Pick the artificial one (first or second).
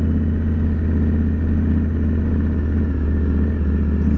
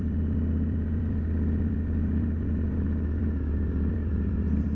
second